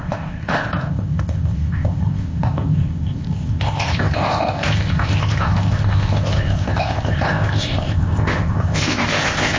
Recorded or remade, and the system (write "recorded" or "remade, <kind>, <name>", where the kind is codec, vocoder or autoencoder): remade, codec, ZipCodec